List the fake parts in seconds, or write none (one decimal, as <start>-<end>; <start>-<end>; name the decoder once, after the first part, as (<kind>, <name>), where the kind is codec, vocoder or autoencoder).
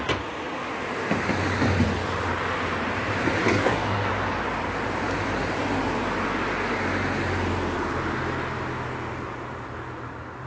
3.4-4.1 (codec, DAC)